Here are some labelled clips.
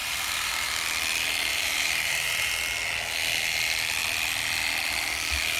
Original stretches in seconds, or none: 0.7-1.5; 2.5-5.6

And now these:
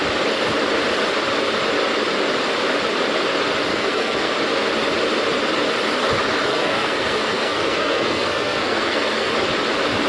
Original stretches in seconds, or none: 0.0-3.7; 4.3-6.5; 9.3-10.1

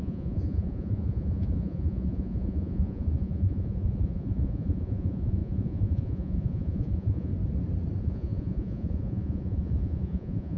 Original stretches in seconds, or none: 7.3-8.0

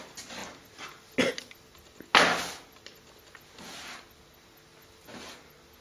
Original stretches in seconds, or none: 0.0-5.8